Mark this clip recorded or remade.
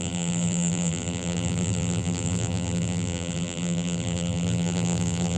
remade